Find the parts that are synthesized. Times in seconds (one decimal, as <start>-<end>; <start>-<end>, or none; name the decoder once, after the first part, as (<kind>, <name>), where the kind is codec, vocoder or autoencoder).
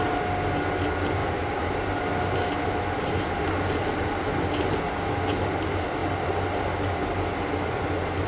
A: none